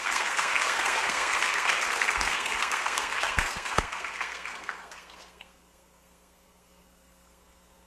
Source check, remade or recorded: remade